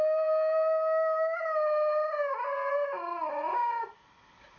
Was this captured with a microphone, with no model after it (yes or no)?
yes